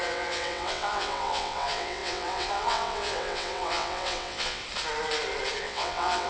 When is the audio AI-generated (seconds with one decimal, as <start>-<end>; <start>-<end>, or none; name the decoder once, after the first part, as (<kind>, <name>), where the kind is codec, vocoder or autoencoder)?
0.0-4.6 (vocoder, WaveNeXt); 5.6-6.3